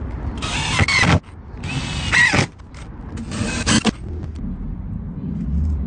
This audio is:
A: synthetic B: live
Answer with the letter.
B